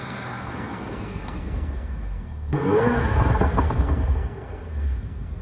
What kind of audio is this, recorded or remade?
remade